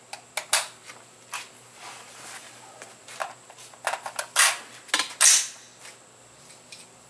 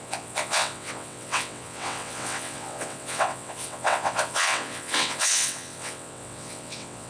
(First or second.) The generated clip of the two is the second